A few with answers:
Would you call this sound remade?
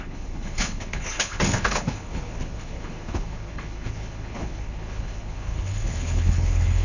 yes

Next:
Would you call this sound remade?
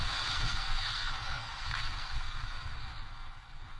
yes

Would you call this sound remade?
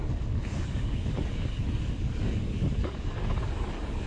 yes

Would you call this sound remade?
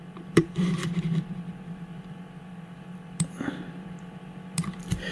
yes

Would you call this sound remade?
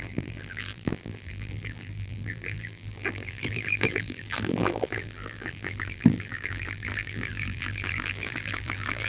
yes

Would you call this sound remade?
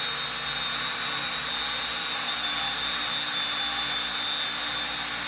no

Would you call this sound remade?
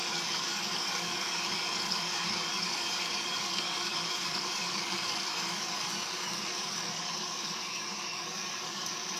yes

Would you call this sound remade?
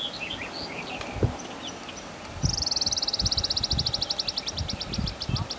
no